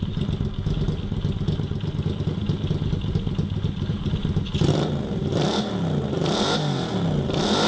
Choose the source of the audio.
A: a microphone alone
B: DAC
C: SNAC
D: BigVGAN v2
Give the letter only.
A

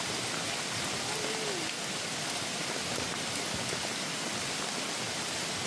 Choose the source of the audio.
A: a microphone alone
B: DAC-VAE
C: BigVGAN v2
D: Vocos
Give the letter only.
A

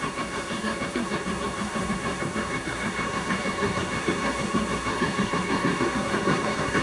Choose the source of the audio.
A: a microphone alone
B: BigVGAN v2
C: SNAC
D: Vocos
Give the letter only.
C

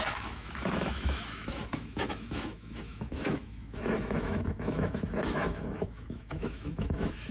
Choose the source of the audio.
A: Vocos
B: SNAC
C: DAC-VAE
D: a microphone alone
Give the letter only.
C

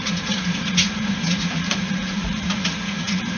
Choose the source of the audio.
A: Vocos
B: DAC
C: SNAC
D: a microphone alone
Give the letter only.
A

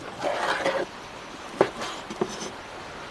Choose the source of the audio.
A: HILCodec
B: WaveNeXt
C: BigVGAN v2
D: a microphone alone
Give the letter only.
D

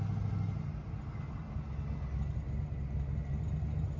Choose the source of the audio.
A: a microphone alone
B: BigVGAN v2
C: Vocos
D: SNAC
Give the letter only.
A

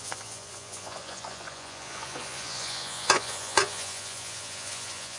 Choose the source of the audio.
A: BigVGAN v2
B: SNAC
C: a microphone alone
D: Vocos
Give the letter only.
D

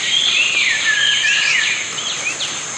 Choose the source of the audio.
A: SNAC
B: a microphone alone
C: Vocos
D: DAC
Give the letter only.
B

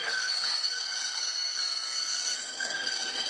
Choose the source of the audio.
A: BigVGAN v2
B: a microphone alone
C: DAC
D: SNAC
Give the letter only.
D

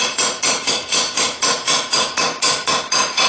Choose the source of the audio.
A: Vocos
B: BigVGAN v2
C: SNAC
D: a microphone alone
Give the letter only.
A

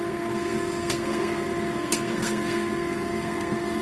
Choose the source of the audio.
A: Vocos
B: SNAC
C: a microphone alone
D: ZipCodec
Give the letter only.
B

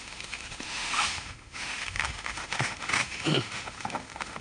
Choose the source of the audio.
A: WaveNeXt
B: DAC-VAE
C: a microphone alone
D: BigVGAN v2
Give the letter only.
B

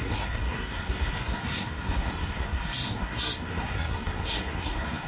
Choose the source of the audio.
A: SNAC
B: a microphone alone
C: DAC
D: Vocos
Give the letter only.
A